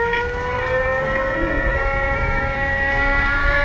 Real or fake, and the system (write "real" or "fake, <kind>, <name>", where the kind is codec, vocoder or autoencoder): fake, codec, SNAC